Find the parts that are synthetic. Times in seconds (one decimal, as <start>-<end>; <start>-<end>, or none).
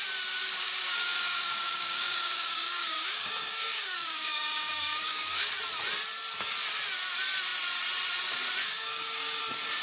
0.4-5.5; 8.6-9.4